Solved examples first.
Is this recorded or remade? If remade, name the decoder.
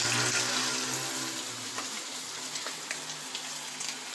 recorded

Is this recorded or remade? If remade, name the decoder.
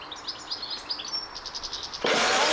recorded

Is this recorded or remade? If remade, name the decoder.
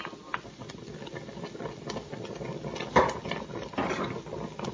recorded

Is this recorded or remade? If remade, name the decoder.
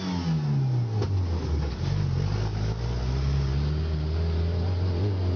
recorded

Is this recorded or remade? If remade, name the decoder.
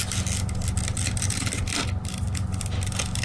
recorded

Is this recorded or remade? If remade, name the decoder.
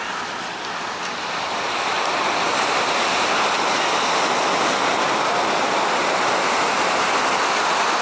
recorded